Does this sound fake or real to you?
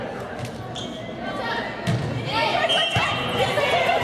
real